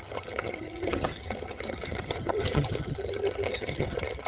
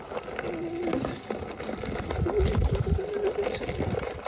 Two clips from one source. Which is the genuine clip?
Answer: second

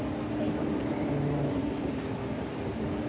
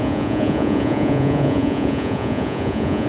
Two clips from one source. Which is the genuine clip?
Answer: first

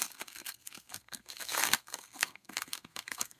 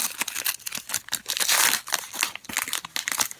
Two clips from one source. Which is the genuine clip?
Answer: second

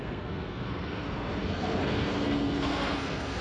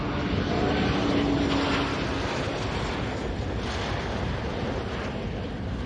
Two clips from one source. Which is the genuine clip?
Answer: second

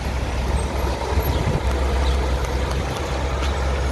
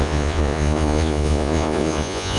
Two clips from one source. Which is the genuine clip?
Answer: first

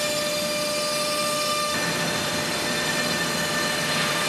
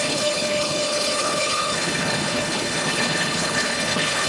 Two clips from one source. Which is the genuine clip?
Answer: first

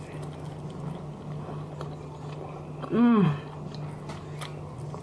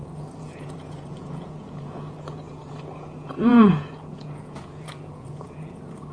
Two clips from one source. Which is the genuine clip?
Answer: first